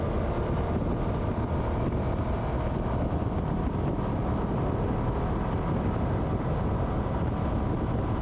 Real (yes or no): yes